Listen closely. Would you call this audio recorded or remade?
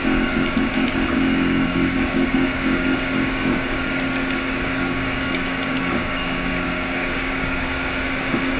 remade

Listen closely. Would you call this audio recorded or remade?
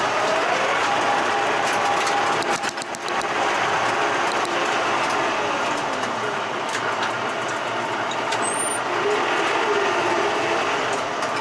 recorded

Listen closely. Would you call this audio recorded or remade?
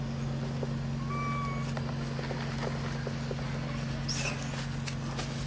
recorded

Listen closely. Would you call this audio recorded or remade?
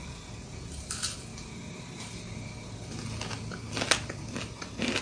recorded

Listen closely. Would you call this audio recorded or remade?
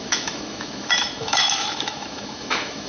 remade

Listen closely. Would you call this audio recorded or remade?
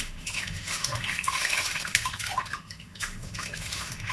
remade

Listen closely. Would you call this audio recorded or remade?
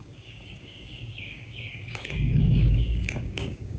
remade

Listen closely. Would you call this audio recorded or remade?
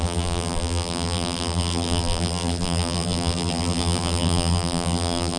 remade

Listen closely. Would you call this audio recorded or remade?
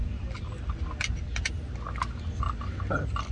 recorded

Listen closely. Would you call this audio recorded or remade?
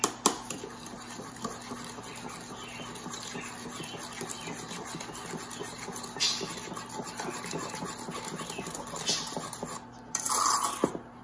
recorded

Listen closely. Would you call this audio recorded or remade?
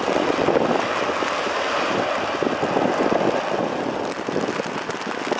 recorded